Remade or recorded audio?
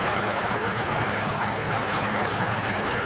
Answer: remade